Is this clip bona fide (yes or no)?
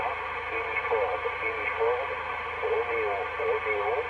yes